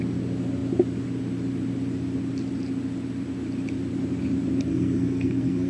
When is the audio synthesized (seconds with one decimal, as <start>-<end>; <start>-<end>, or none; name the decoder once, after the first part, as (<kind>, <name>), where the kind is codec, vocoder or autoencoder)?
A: 4.7-5.7 (codec, SNAC)

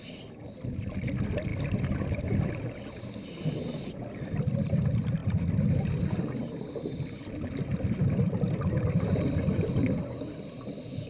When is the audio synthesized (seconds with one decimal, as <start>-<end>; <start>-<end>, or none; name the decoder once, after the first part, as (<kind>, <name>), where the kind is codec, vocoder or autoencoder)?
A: none

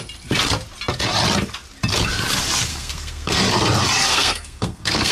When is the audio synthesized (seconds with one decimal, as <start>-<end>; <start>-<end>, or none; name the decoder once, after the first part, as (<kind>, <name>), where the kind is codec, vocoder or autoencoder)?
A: 2.7-3.4 (codec, SNAC); 4.1-5.1

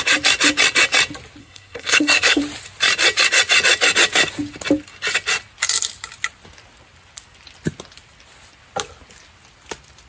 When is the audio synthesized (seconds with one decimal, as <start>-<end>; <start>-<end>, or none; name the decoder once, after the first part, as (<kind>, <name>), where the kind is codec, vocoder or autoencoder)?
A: 1.4-2.4 (codec, SNAC)

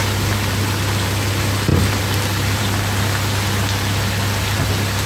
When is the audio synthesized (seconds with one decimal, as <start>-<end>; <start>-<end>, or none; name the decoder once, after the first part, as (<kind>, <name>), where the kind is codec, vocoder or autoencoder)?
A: none

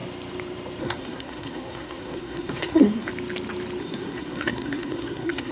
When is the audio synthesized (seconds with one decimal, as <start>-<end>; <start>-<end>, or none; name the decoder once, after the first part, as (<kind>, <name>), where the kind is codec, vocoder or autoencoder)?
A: 0.8-3.1 (codec, SNAC); 3.8-5.5